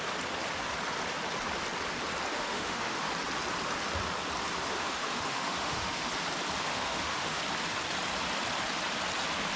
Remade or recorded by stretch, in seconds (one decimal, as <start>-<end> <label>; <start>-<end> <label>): 0.0-2.3 recorded; 2.3-3.1 remade; 3.1-4.8 recorded; 4.8-6.1 remade; 6.1-6.7 recorded; 6.7-7.4 remade; 7.4-9.6 recorded